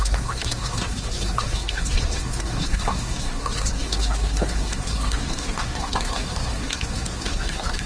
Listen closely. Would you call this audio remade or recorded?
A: remade